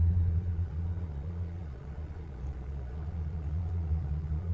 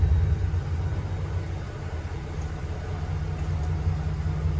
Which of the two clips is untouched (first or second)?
second